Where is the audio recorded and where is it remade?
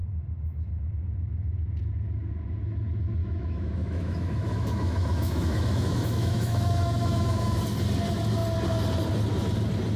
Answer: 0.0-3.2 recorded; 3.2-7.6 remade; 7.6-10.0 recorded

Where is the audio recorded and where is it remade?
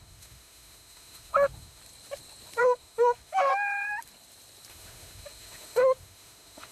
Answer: 0.0-1.8 remade; 1.8-2.6 recorded; 2.6-3.5 remade; 3.5-4.7 recorded; 4.7-6.7 remade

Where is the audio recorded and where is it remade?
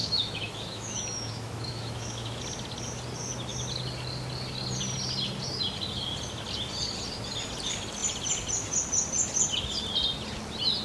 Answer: 0.0-2.4 remade; 2.4-10.8 recorded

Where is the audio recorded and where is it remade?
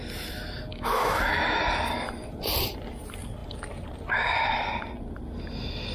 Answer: 0.0-0.7 recorded; 0.7-1.6 remade; 1.6-5.9 recorded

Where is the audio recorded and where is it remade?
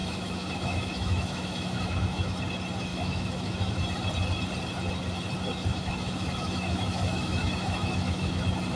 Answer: 0.0-2.4 remade; 2.4-2.9 recorded; 2.9-3.7 remade; 3.7-5.7 recorded; 5.7-8.4 remade; 8.4-8.8 recorded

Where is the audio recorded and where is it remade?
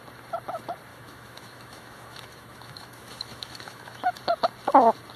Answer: 0.0-0.9 recorded; 0.9-4.0 remade; 4.0-5.2 recorded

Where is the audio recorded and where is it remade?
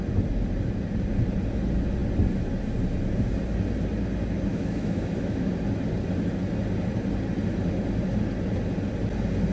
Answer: 0.0-4.5 recorded; 4.5-5.5 remade; 5.5-9.5 recorded